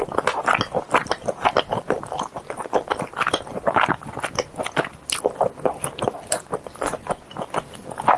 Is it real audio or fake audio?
real